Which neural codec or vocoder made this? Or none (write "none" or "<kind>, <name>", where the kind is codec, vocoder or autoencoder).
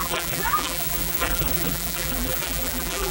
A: vocoder, BigVGAN v2